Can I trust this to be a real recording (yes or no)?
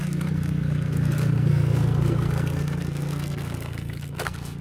no